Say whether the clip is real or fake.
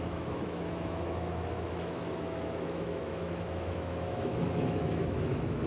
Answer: fake